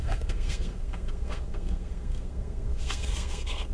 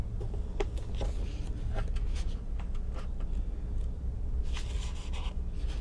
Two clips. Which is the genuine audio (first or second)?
second